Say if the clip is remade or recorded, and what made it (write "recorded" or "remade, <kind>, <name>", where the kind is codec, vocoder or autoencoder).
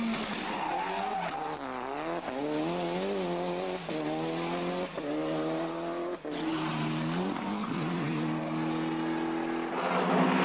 recorded